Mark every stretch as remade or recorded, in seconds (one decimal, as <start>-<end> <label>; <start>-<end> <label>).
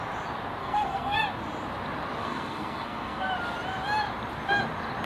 0.0-0.6 recorded; 0.6-1.2 remade; 1.2-2.2 recorded; 2.2-3.3 remade; 3.3-5.1 recorded